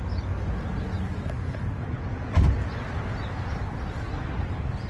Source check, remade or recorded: recorded